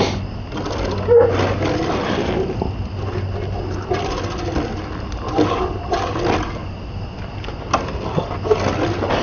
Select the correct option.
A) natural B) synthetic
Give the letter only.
A